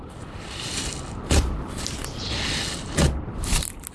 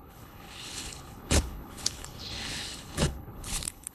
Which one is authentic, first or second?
first